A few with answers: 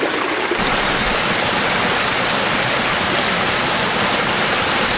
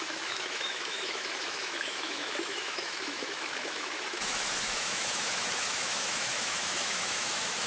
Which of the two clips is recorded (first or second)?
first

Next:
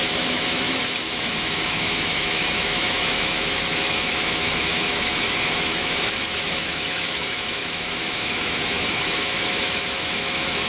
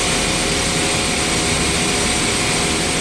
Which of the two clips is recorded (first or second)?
second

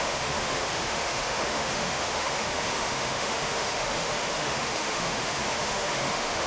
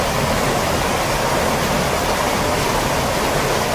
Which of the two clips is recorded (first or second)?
second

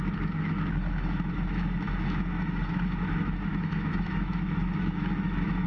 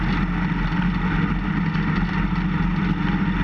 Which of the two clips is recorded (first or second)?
second